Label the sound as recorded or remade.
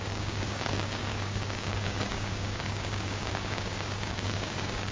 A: remade